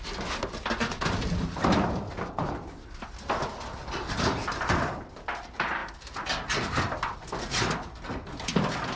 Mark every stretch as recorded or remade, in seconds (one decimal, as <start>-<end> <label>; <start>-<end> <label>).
0.0-9.0 recorded

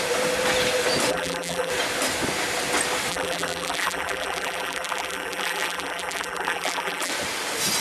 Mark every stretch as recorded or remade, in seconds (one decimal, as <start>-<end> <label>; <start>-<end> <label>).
0.0-1.1 recorded; 1.1-1.7 remade; 1.7-3.1 recorded; 3.1-7.1 remade; 7.1-7.8 recorded

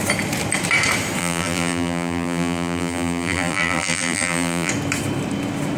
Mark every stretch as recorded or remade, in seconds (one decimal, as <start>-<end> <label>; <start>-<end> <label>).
0.0-1.2 recorded; 1.2-4.7 remade; 4.7-5.8 recorded

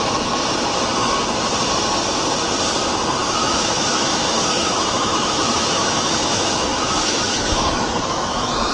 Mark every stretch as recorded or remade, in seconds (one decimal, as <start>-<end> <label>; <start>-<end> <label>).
0.0-3.2 recorded; 3.2-8.7 remade

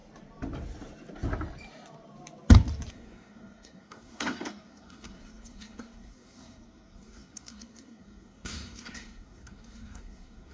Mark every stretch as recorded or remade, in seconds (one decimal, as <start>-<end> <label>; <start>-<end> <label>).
0.0-2.9 recorded; 2.9-10.5 remade

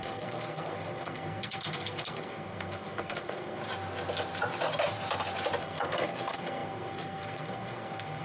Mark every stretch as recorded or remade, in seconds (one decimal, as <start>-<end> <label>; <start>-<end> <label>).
0.0-3.6 remade; 3.6-5.6 recorded; 5.6-8.2 remade

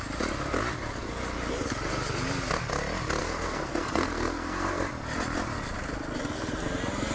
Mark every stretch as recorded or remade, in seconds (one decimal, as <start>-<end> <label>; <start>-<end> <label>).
0.0-3.2 recorded; 3.2-4.9 remade; 4.9-7.1 recorded